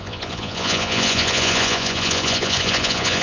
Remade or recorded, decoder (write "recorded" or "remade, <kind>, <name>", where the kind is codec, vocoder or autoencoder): remade, vocoder, Vocos